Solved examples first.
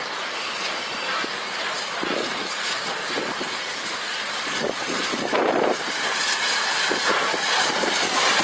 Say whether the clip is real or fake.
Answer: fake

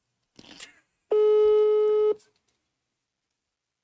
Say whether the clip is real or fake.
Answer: real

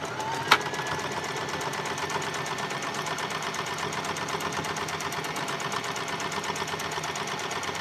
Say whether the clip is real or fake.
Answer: real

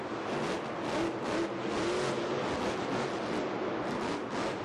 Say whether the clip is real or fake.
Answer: real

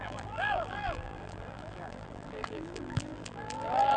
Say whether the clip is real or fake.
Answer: fake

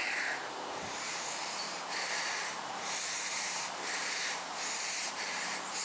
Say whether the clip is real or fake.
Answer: fake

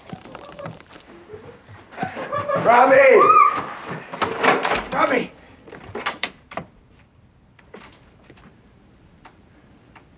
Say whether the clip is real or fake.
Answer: fake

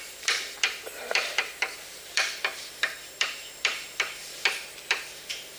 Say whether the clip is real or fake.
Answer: fake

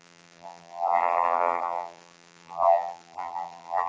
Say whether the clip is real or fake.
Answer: fake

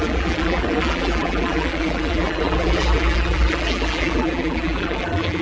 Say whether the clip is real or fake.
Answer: fake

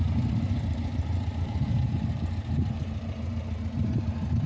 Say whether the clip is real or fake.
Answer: fake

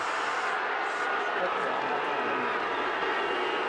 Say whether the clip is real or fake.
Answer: real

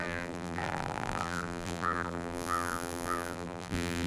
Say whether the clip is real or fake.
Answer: fake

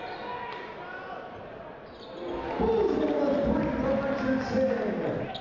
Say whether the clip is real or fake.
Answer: real